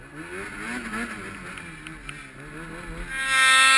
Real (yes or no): yes